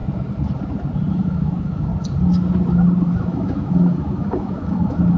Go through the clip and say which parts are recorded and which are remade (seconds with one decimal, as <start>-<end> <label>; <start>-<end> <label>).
0.0-1.1 recorded; 1.1-1.9 remade; 1.9-3.2 recorded; 3.2-5.2 remade